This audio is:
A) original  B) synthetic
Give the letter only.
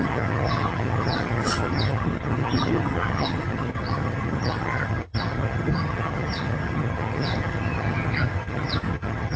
B